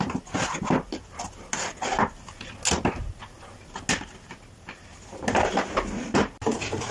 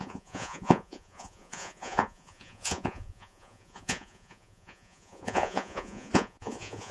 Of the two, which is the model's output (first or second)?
second